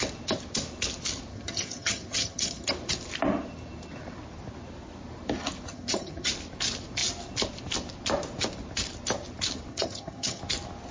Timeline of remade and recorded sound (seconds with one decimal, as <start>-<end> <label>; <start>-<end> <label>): 0.0-1.3 recorded; 1.3-2.7 remade; 2.7-5.7 recorded; 5.7-6.3 remade; 6.3-9.7 recorded; 9.7-10.4 remade; 10.4-10.9 recorded